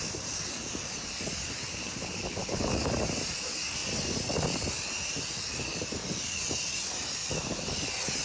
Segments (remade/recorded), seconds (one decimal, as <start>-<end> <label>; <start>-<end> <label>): 0.0-1.8 recorded; 1.8-2.7 remade; 2.7-8.2 recorded